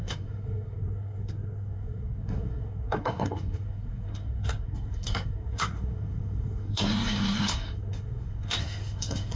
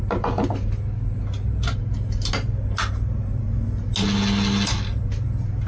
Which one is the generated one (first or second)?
first